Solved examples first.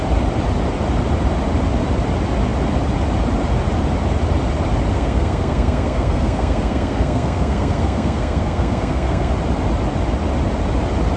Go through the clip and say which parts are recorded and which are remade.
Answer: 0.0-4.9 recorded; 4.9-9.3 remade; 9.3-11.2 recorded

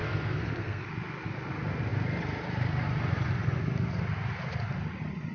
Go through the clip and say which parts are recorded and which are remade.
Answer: 0.0-0.9 remade; 0.9-5.3 recorded

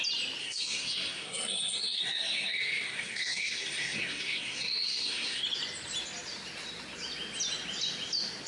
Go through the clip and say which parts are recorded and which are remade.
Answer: 0.0-0.4 recorded; 0.4-5.4 remade; 5.4-8.5 recorded

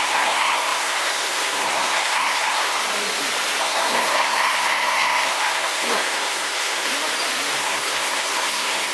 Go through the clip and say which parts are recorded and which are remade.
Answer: 0.0-2.8 remade; 2.8-3.6 recorded; 3.6-6.9 remade; 6.9-7.6 recorded; 7.6-8.9 remade

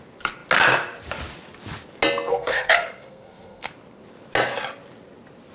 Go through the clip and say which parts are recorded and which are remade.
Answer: 0.0-2.3 recorded; 2.3-3.7 remade; 3.7-5.5 recorded

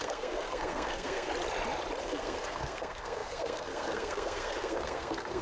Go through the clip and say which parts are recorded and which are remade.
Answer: 0.0-1.3 remade; 1.3-2.0 recorded; 2.0-5.4 remade